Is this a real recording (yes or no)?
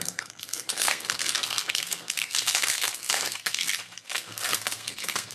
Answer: no